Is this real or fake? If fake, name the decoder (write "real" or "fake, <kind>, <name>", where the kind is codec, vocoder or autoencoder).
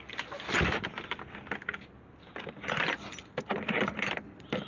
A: real